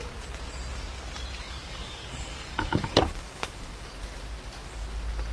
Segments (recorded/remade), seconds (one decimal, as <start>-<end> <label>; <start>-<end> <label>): 0.0-1.4 recorded; 1.4-3.9 remade; 3.9-5.3 recorded